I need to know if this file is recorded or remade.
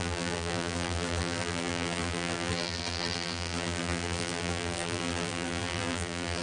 remade